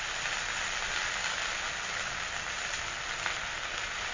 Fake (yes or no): no